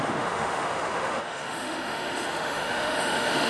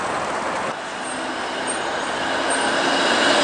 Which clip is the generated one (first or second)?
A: first